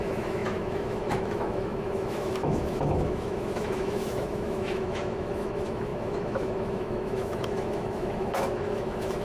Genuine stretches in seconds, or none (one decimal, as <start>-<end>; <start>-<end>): none